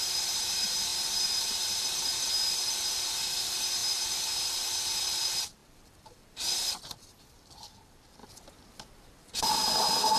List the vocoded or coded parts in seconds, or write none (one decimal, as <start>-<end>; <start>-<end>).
0.0-3.8; 5.1-8.2; 9.4-10.2